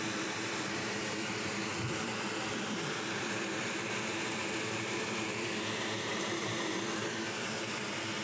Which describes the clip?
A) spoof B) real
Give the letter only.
A